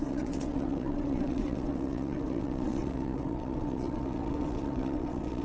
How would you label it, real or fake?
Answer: fake